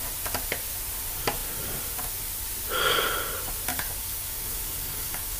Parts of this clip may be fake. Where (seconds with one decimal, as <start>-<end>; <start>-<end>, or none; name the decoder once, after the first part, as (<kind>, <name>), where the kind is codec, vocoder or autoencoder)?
3.7-5.4 (codec, DAC)